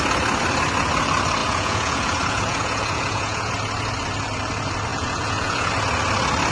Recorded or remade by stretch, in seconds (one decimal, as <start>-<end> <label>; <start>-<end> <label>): 0.0-1.4 recorded; 1.4-3.5 remade; 3.5-4.9 recorded; 4.9-5.7 remade; 5.7-6.5 recorded